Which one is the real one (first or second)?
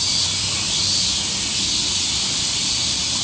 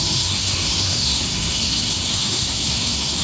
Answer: first